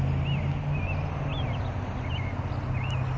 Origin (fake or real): real